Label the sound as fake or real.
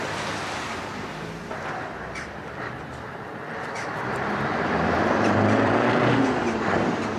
fake